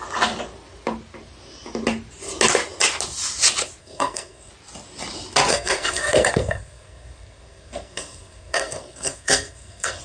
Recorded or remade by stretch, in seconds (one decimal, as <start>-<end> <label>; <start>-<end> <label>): 0.0-3.8 recorded; 3.8-4.5 remade; 4.5-5.5 recorded; 5.5-10.0 remade